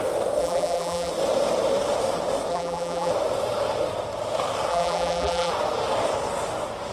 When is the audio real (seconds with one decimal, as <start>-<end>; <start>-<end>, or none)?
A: 0.0-0.4; 1.1-2.5; 3.1-4.7; 5.5-6.9